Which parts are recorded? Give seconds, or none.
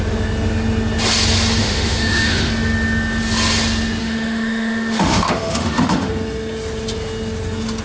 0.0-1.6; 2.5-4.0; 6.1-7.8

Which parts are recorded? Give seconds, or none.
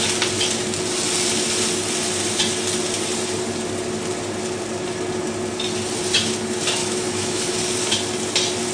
0.0-6.8; 7.4-8.7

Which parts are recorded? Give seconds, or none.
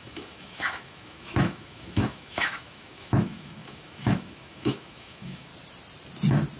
5.5-6.6